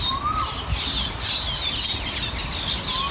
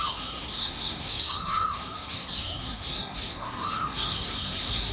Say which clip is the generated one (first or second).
second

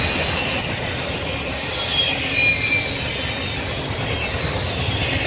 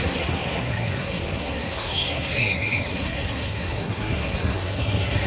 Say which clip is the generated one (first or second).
second